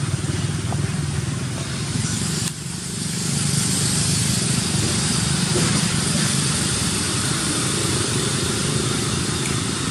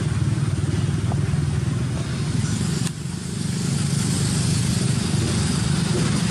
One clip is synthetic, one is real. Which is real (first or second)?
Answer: second